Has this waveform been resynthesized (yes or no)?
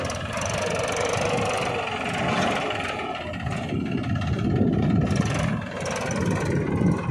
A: no